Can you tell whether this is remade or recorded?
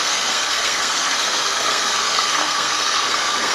remade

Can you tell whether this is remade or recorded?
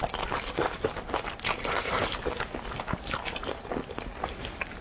recorded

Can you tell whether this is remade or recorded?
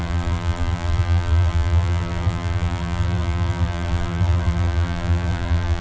remade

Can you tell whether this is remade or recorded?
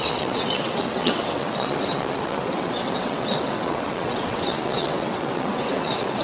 remade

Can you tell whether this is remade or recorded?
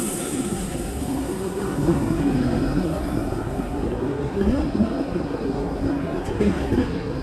remade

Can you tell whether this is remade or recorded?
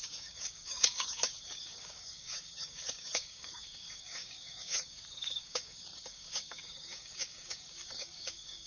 remade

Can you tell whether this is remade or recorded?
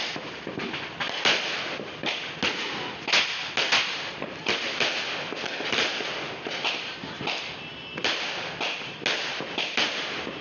recorded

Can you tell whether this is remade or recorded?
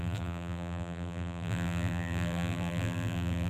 remade